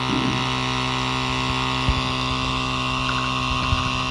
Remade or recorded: recorded